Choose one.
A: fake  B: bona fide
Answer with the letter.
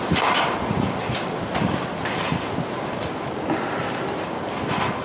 B